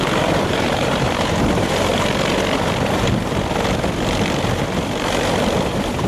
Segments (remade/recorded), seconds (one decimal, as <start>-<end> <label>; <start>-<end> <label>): 0.0-1.9 remade; 1.9-5.6 recorded; 5.6-6.1 remade